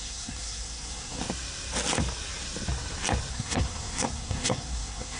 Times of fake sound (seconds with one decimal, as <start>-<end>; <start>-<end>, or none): 0.0-1.2; 3.3-5.2